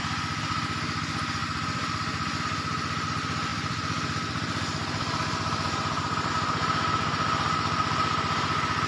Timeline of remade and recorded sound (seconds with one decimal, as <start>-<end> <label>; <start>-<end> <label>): 0.0-1.4 recorded; 1.4-2.4 remade; 2.4-3.5 recorded; 3.5-6.3 remade; 6.3-8.9 recorded